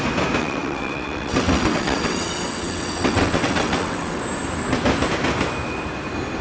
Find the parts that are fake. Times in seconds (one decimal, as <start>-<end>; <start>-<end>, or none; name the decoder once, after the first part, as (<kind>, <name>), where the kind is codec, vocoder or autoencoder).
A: 0.4-4.2 (vocoder, WaveNeXt)